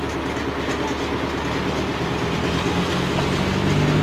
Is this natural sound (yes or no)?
yes